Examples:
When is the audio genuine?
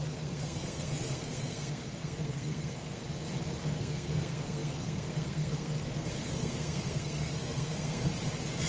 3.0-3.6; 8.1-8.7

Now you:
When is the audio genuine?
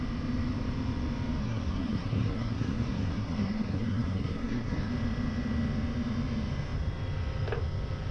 0.0-1.4; 4.9-8.1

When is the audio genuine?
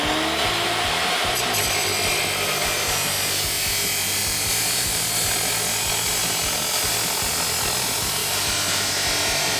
0.0-9.6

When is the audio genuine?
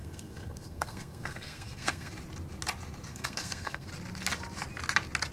2.1-3.1; 3.9-5.3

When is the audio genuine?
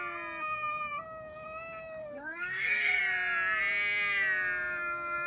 0.0-2.0; 3.0-5.3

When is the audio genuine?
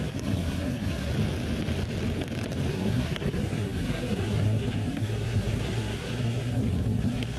1.1-2.7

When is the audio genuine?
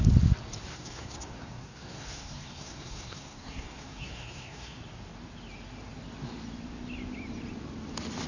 0.0-0.7; 4.8-8.3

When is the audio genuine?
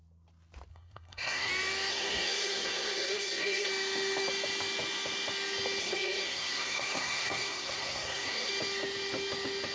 0.0-0.7; 1.5-1.9; 3.7-5.8; 8.5-9.7